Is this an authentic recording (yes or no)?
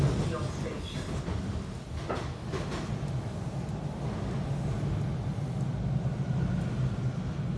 yes